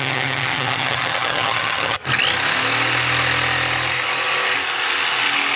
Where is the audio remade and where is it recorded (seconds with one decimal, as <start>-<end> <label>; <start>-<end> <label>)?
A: 0.0-2.0 remade; 2.0-5.6 recorded